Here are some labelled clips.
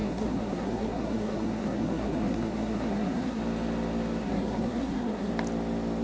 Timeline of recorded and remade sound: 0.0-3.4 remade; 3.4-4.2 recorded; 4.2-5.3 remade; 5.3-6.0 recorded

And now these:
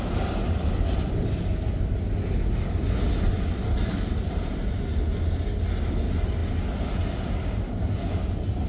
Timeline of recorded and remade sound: 0.0-8.7 recorded

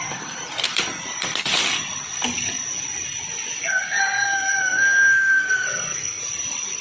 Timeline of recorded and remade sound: 0.0-3.6 recorded; 3.6-6.2 remade; 6.2-6.8 recorded